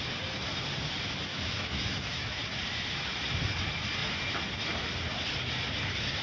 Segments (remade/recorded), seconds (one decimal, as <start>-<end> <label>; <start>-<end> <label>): 0.0-1.3 recorded; 1.3-2.4 remade; 2.4-6.2 recorded